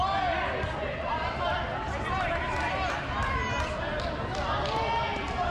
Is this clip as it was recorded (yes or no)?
yes